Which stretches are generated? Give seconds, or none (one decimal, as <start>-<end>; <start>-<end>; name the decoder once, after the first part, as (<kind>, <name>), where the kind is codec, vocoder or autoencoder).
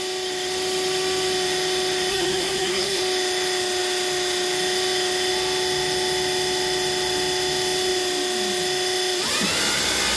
2.1-3.0 (codec, SNAC)